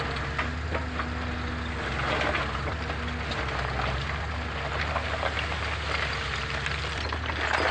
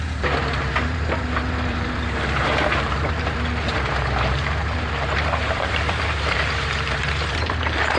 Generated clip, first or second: second